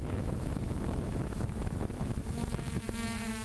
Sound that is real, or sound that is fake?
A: fake